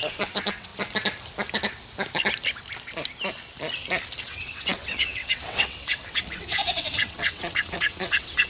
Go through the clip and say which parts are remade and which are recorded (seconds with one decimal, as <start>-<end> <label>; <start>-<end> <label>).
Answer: 0.0-0.7 remade; 0.7-4.2 recorded; 4.2-8.5 remade